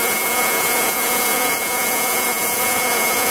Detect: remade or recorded remade